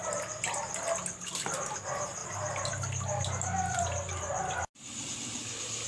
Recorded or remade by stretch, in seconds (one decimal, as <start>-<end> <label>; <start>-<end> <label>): 0.0-5.9 recorded